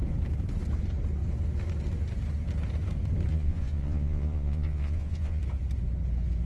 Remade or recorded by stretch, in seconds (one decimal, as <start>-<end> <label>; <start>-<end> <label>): 0.0-3.3 recorded; 3.3-5.4 remade; 5.4-6.5 recorded